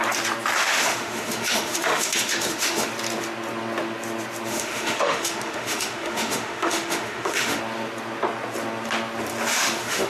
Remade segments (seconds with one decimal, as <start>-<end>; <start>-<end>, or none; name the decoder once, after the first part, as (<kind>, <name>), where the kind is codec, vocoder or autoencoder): 0.6-2.9 (autoencoder, DAC-VAE); 4.5-7.6; 9.5-10.1